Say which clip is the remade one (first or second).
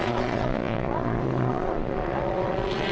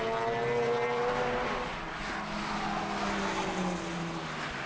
first